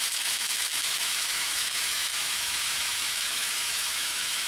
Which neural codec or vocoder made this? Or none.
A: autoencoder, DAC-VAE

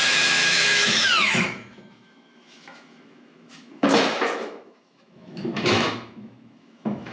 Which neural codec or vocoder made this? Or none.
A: autoencoder, DAC-VAE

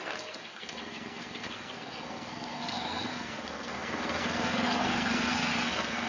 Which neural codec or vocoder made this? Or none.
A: codec, SNAC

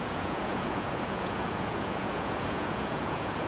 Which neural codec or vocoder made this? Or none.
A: vocoder, Vocos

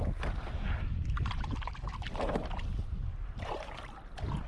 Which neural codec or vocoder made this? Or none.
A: vocoder, BigVGAN v2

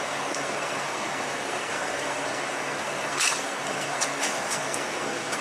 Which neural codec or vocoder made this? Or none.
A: codec, SNAC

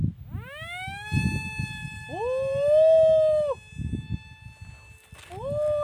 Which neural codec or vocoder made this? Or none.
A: none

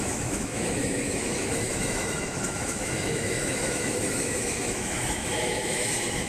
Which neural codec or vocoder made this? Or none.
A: autoencoder, DAC-VAE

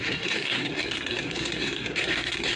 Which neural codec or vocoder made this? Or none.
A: codec, SNAC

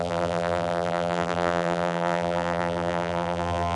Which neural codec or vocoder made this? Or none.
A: vocoder, BigVGAN v2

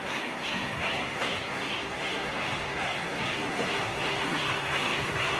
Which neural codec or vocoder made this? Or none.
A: codec, SNAC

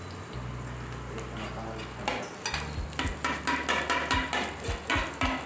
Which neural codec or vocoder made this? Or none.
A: none